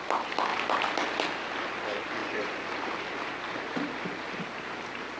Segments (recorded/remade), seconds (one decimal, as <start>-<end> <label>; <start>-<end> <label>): 0.0-2.2 recorded; 2.2-2.8 remade; 2.8-5.2 recorded